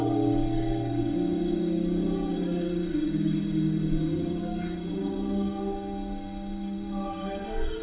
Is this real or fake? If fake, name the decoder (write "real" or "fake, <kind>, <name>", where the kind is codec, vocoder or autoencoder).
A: fake, codec, DAC